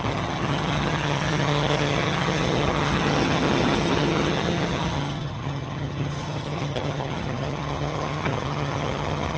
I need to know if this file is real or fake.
fake